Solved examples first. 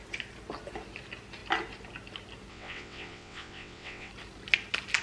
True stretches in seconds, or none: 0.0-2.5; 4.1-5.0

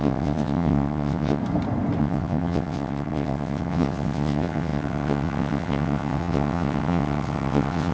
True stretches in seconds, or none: 1.4-2.0